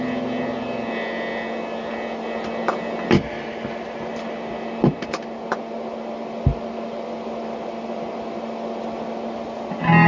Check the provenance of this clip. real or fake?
real